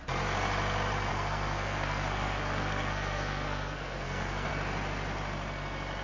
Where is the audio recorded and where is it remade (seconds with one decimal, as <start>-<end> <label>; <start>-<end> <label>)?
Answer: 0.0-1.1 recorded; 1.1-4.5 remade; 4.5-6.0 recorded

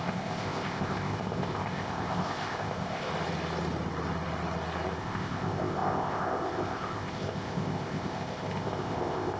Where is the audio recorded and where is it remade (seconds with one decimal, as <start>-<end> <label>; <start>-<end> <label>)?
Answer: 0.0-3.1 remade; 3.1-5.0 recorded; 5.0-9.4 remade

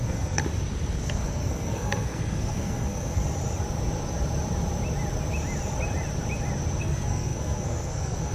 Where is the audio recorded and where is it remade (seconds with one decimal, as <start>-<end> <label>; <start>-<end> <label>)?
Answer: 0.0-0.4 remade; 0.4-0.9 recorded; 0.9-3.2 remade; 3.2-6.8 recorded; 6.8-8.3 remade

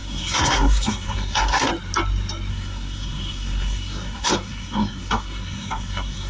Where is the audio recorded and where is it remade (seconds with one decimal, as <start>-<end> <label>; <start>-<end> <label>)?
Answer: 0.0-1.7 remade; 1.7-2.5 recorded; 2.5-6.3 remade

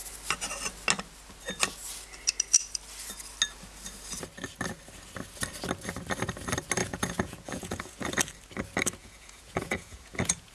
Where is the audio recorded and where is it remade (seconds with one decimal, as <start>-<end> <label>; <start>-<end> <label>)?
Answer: 0.0-6.8 recorded; 6.8-8.2 remade; 8.2-9.0 recorded; 9.0-10.5 remade

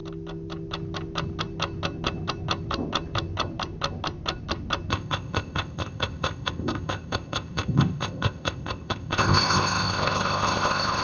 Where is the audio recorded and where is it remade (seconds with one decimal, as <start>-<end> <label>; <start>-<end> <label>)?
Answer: 0.0-4.9 recorded; 4.9-11.0 remade